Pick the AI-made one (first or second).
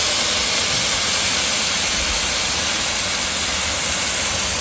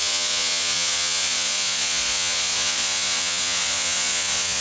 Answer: second